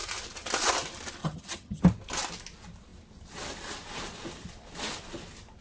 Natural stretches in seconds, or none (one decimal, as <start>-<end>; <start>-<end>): 0.0-1.2; 1.8-5.6